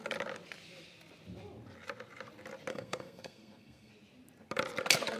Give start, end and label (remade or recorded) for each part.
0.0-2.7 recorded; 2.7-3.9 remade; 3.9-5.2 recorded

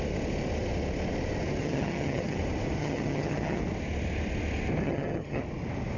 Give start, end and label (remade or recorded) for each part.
0.0-1.6 recorded; 1.6-2.4 remade; 2.4-2.8 recorded; 2.8-3.6 remade; 3.6-4.8 recorded; 4.8-5.4 remade; 5.4-6.0 recorded

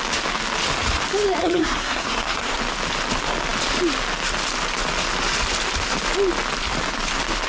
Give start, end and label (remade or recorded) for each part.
0.0-1.4 recorded; 1.4-2.6 remade; 2.6-7.5 recorded